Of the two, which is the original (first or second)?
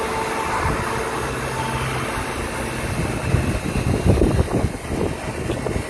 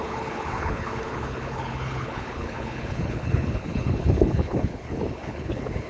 first